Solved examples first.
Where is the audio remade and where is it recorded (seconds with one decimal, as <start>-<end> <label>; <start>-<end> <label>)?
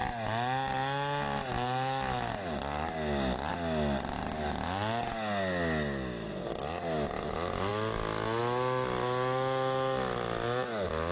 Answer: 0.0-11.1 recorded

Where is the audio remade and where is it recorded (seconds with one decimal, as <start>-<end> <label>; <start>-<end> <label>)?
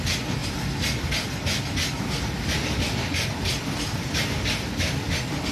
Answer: 0.0-5.5 recorded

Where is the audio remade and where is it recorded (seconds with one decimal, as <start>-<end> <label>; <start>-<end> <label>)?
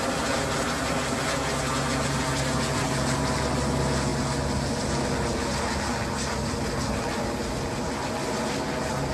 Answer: 0.0-9.1 recorded